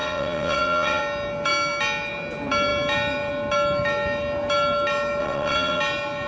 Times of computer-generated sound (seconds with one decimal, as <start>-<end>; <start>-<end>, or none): 0.0-1.0; 5.2-5.8